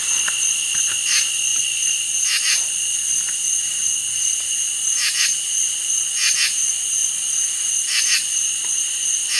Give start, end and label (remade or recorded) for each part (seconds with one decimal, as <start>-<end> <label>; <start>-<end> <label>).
0.0-1.5 recorded; 1.5-2.0 remade; 2.0-9.4 recorded